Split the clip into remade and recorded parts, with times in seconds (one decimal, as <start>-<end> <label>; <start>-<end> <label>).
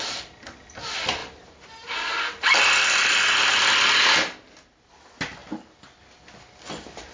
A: 0.0-7.1 recorded